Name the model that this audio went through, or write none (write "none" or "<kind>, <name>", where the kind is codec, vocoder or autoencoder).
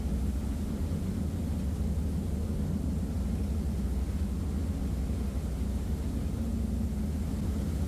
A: none